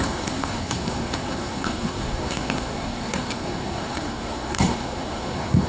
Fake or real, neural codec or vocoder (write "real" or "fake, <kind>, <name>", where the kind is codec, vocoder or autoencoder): fake, codec, SNAC